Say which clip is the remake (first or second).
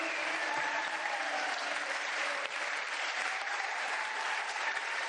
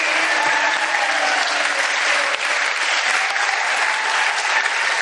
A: first